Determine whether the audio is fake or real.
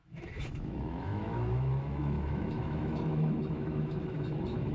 fake